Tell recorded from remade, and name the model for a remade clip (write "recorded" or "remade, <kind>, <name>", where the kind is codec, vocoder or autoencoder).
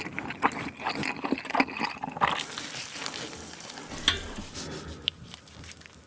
recorded